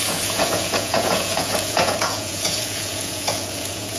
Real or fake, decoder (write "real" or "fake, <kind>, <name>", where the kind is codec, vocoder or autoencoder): fake, vocoder, Vocos